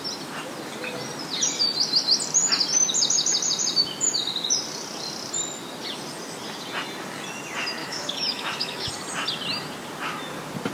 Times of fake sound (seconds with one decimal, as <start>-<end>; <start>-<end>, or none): 7.8-8.9

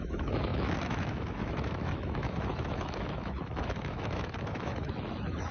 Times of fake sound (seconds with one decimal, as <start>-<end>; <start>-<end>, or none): 0.0-5.5

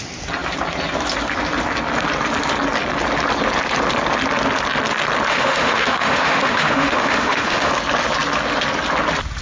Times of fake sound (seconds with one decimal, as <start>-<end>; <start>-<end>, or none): 5.3-7.7

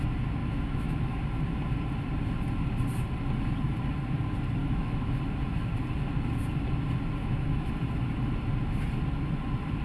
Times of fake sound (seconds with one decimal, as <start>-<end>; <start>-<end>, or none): 0.4-1.2; 4.6-5.2; 7.2-7.7

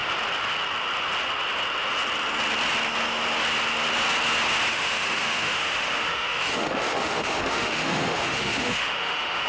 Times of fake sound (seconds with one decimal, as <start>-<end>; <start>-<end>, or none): 4.7-9.5

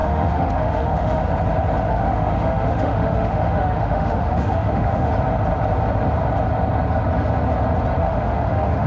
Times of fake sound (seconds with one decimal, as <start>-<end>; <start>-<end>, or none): 0.0-1.2; 1.9-5.1; 8.0-8.9

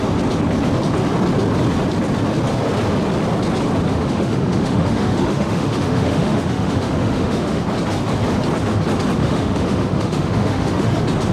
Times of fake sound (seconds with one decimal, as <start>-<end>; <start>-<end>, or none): 3.9-7.6; 9.2-10.9

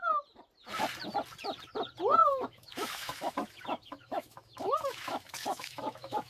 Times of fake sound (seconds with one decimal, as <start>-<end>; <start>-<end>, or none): 2.2-6.3